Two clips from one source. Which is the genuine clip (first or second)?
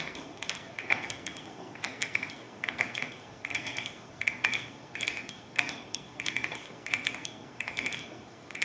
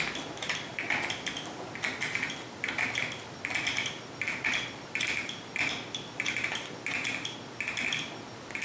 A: second